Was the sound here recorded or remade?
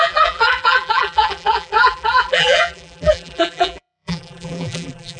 remade